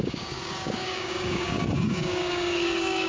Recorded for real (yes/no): no